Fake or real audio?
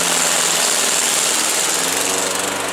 real